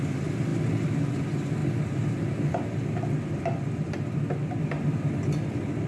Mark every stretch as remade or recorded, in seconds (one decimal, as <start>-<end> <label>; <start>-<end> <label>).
0.0-5.9 recorded